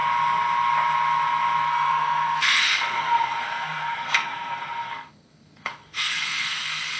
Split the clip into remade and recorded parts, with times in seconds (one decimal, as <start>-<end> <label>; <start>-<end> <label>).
0.0-1.7 recorded; 1.7-7.0 remade